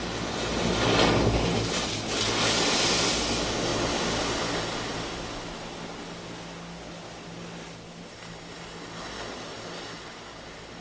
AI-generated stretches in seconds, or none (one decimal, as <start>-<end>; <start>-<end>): none